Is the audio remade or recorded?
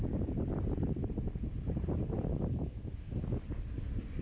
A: remade